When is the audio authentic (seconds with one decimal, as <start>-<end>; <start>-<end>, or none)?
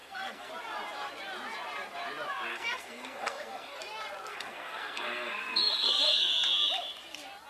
0.5-2.5; 3.8-4.3; 6.3-7.5